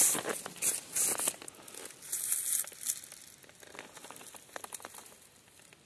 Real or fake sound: real